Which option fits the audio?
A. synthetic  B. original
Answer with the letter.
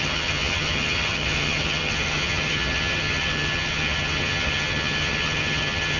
A